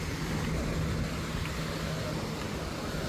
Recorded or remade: recorded